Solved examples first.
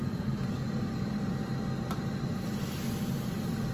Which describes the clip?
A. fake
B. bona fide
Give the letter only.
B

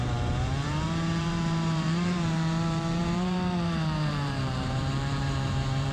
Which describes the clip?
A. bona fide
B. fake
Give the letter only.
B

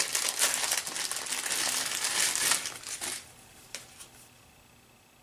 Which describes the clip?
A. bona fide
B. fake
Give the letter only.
A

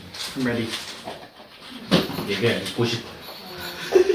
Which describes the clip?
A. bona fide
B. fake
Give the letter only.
A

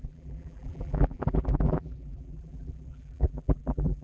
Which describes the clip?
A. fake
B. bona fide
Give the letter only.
A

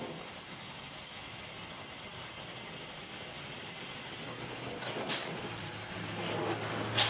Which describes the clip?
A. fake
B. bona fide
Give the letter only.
B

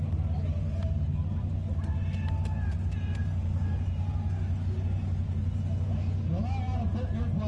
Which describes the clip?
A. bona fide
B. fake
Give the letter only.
A